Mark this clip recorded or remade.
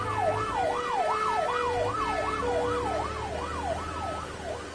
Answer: recorded